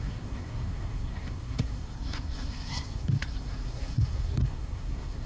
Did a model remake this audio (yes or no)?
yes